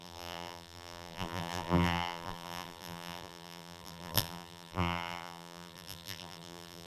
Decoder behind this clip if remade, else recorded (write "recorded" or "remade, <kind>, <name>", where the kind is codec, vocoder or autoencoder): remade, vocoder, BigVGAN v2